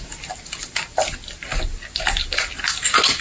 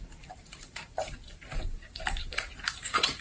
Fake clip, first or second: second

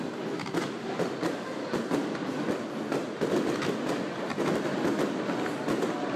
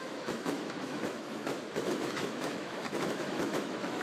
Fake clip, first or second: second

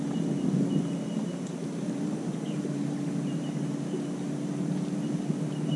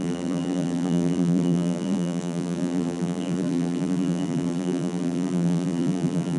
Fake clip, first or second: second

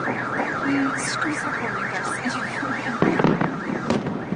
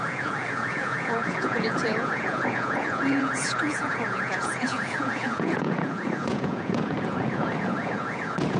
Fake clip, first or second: second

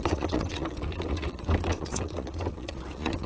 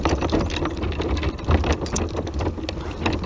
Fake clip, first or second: first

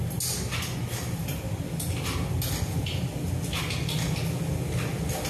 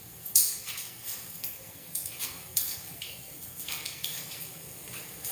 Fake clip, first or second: second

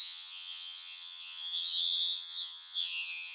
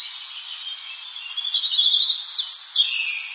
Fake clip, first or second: first